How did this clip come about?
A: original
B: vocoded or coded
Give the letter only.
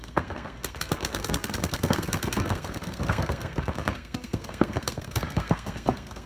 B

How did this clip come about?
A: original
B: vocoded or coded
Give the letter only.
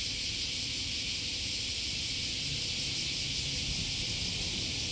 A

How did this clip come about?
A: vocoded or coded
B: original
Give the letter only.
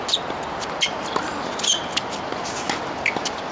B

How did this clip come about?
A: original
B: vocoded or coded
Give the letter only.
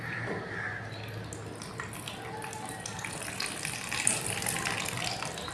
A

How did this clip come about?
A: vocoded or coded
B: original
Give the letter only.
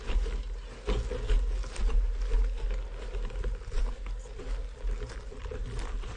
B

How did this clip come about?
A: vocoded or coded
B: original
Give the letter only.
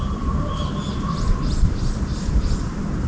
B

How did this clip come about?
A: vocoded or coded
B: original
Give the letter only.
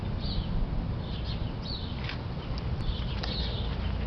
B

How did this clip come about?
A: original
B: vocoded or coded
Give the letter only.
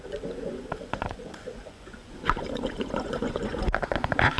B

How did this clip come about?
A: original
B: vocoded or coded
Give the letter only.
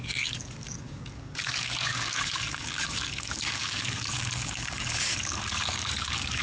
B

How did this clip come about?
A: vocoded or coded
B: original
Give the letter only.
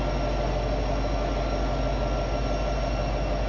B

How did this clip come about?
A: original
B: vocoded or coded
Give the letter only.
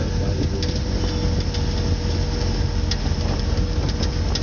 A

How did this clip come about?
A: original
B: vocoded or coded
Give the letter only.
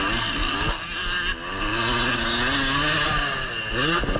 A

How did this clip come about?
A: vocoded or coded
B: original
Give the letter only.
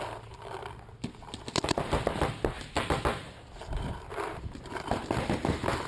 B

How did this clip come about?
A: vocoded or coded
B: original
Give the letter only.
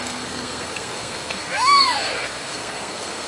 A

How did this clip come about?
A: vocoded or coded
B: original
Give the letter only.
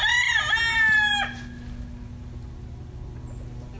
B